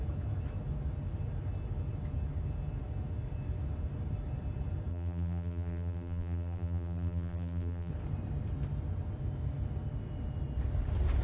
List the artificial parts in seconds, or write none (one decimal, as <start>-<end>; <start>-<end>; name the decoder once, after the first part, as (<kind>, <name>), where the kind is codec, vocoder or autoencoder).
4.9-7.9 (vocoder, BigVGAN v2)